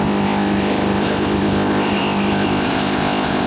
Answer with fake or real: fake